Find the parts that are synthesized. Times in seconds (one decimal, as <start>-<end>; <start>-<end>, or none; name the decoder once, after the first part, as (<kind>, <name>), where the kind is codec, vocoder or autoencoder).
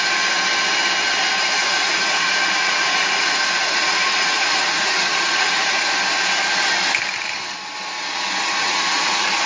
1.6-5.9 (vocoder, Vocos); 8.4-9.5